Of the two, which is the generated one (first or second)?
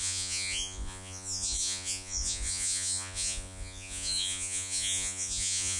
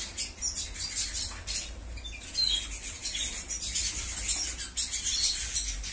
first